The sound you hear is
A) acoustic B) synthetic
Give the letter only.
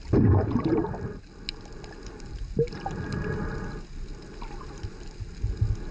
A